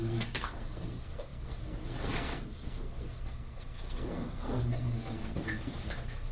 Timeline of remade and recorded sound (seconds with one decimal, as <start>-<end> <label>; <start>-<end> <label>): 0.0-6.3 remade